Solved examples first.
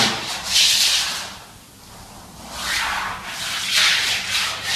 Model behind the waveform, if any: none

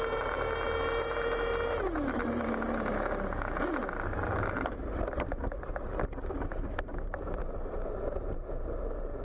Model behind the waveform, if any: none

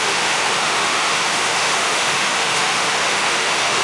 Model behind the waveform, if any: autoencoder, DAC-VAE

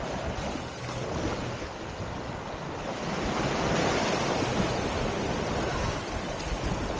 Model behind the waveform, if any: none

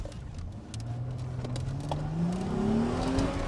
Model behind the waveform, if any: none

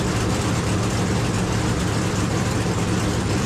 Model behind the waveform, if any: vocoder, BigVGAN v2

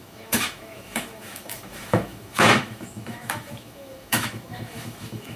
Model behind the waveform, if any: autoencoder, DAC-VAE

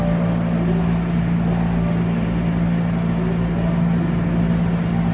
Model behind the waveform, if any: none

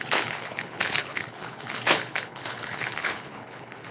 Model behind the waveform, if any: codec, HILCodec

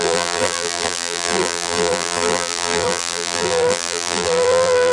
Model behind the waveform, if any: vocoder, BigVGAN v2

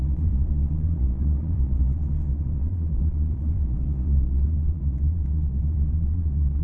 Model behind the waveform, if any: vocoder, Vocos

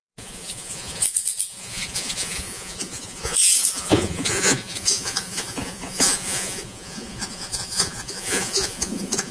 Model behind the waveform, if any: vocoder, Vocos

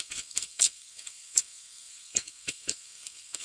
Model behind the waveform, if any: codec, SNAC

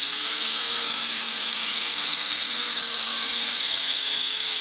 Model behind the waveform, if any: codec, SNAC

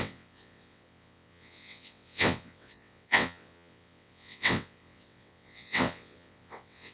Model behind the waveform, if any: vocoder, WaveNeXt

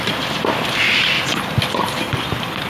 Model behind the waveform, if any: none